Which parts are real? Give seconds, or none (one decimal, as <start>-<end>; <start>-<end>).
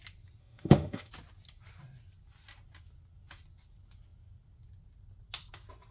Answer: 0.0-0.4; 1.1-5.9